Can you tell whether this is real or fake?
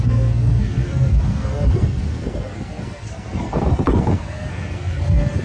fake